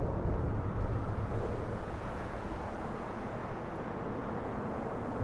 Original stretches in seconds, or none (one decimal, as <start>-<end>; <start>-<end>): none